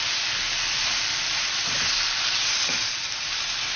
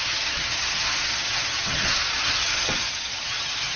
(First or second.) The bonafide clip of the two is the first